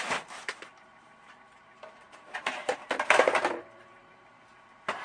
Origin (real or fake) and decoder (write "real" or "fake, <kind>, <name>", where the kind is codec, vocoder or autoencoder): fake, vocoder, BigVGAN v2